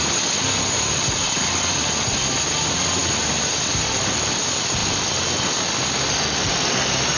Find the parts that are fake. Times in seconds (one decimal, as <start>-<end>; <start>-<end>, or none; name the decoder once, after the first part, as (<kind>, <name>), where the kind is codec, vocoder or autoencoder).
none